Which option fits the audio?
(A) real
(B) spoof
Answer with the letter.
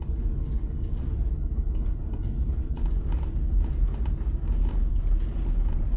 A